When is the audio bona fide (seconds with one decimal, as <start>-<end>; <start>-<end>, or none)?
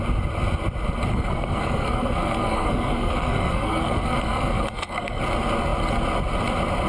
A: 0.0-1.1; 5.2-6.9